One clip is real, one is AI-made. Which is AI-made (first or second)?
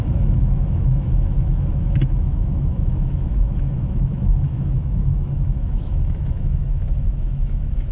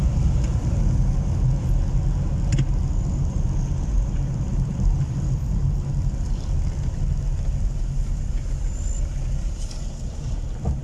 first